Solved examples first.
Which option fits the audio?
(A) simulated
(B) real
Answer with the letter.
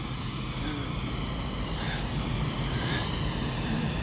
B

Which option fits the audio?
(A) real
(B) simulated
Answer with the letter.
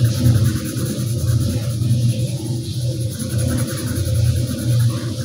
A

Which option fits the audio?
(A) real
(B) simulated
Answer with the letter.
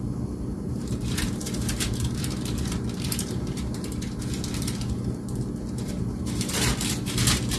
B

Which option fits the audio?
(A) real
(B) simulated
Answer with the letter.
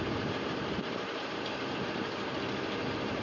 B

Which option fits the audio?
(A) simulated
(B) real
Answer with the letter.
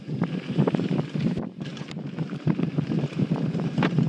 A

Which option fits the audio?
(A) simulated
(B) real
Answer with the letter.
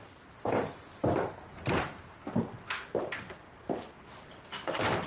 A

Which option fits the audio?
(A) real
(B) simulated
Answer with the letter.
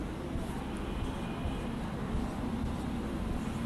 A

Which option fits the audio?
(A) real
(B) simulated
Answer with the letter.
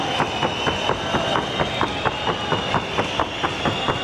A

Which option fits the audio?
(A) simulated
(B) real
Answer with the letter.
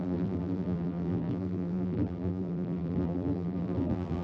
A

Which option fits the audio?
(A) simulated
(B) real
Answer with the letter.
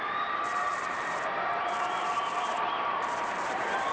A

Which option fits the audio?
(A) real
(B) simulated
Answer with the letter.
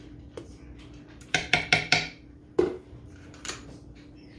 B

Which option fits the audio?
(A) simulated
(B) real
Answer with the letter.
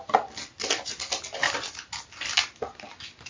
B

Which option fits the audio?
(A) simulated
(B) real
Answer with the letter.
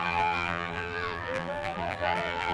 A